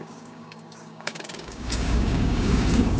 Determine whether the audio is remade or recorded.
remade